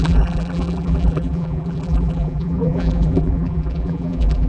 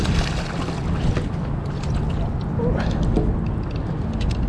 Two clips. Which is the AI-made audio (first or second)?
first